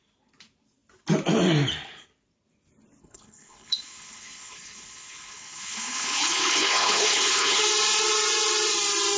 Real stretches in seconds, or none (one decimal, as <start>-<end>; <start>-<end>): 0.0-3.0; 7.6-9.2